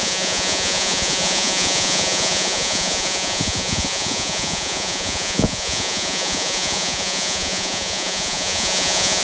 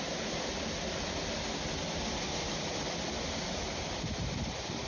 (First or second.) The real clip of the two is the second